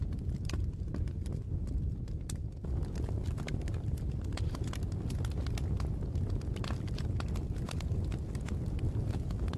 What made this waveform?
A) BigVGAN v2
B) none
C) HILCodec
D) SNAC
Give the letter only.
A